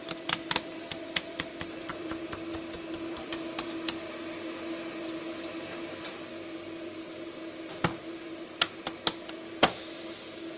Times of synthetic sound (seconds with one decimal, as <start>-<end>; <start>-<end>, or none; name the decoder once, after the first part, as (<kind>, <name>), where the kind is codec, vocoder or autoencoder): none